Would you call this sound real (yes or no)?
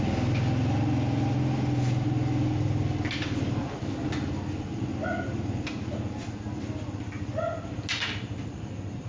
yes